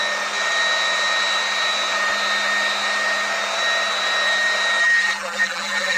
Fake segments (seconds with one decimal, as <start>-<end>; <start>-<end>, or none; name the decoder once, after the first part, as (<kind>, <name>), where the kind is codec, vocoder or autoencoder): 4.8-6.0 (vocoder, BigVGAN v2)